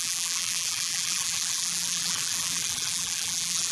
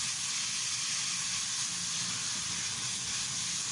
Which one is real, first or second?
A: second